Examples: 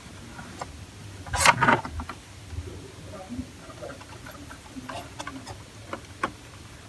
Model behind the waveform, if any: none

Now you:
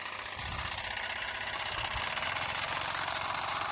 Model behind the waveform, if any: none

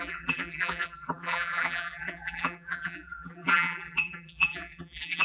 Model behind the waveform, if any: vocoder, BigVGAN v2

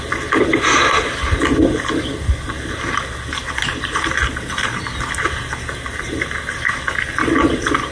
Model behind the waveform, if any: none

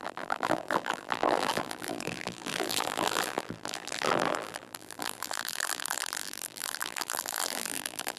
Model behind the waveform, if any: vocoder, BigVGAN v2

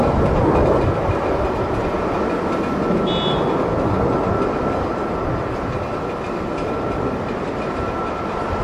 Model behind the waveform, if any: none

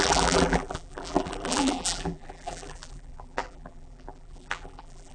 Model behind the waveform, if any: vocoder, BigVGAN v2